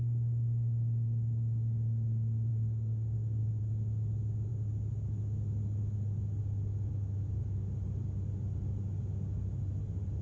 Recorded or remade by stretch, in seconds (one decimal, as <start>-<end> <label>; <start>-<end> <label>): 0.0-2.5 recorded; 2.5-3.6 remade; 3.6-10.2 recorded